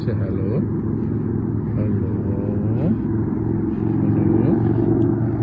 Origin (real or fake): real